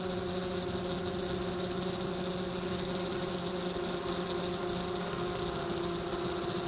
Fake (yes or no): no